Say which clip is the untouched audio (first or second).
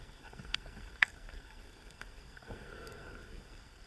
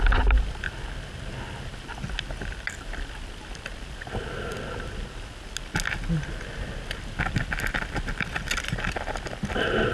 second